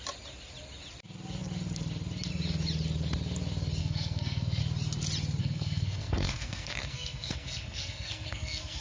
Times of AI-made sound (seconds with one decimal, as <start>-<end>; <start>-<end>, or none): 3.8-4.6; 5.4-8.8